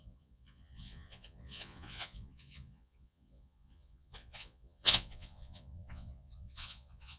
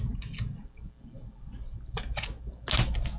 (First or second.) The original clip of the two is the second